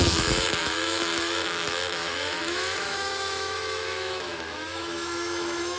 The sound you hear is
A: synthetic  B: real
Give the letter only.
A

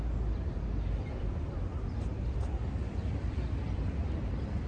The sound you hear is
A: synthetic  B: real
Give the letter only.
A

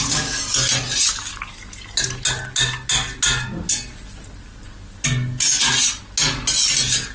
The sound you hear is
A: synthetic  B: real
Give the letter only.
B